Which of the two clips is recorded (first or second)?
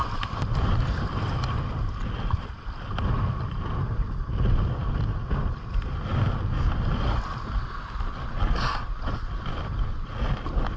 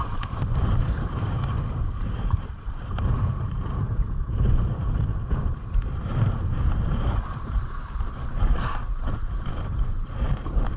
first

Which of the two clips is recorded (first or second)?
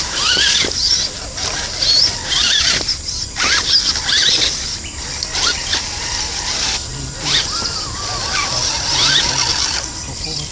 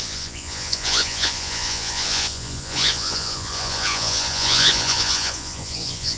first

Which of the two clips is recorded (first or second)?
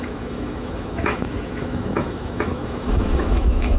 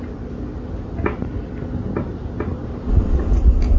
second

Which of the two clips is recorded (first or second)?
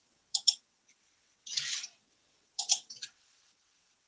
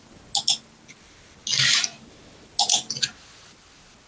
second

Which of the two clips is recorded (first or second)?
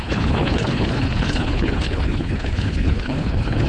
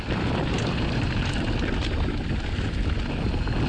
second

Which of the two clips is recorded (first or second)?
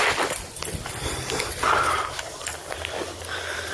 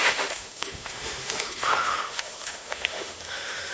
first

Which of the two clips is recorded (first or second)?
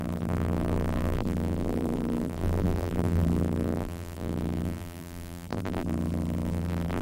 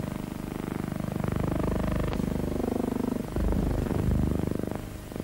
second